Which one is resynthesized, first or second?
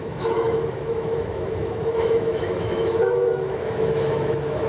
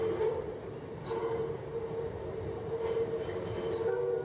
first